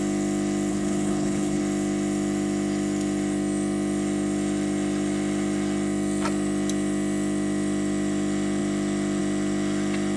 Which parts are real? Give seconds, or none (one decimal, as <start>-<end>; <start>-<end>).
0.0-0.7; 1.6-10.2